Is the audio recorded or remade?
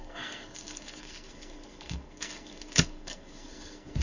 remade